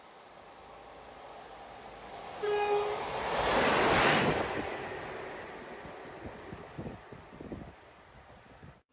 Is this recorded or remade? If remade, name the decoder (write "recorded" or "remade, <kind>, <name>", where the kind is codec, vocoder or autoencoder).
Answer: recorded